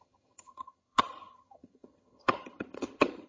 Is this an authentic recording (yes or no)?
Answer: no